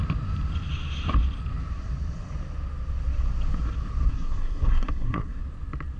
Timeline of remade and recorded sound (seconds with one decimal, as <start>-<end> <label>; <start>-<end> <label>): 0.0-4.1 recorded; 4.1-5.4 remade; 5.4-6.0 recorded